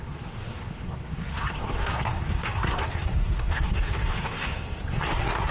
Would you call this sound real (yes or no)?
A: no